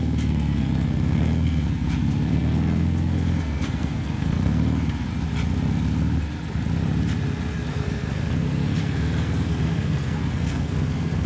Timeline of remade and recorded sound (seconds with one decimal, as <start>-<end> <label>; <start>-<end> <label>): 0.0-5.1 remade; 5.1-7.7 recorded; 7.7-11.3 remade